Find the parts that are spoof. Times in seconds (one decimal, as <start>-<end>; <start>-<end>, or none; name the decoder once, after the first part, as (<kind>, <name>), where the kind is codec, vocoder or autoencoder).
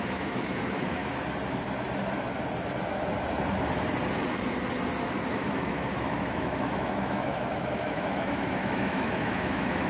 0.0-1.0 (autoencoder, DAC-VAE); 5.3-9.9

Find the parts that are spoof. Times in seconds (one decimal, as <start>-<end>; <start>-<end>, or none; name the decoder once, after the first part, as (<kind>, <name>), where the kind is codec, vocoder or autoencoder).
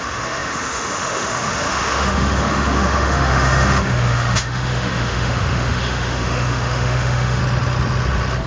0.0-7.4 (autoencoder, DAC-VAE)